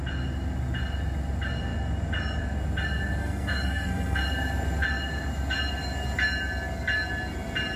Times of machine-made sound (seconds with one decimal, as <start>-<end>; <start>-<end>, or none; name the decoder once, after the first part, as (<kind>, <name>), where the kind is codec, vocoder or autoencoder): 3.2-4.2 (codec, SNAC)

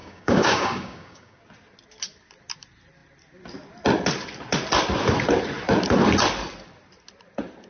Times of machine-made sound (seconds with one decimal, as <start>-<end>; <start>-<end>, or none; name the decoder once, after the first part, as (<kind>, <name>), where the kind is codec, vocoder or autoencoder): 0.0-1.4 (codec, DAC)

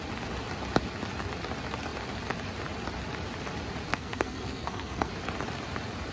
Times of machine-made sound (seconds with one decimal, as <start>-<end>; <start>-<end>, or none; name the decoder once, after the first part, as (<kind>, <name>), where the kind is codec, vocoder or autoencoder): 3.9-5.1 (codec, SNAC)

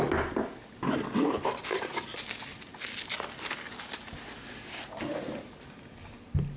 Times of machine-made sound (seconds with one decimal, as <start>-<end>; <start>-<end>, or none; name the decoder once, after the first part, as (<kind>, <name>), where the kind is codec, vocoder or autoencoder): none

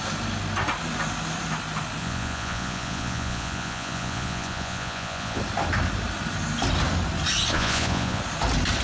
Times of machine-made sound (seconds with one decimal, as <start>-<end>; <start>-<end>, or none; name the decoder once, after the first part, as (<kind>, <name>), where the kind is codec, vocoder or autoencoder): 2.0-5.4 (vocoder, Vocos); 7.5-8.2